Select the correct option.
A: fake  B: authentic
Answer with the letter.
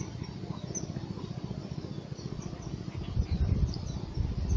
B